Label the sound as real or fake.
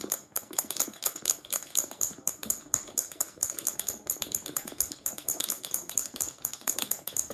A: fake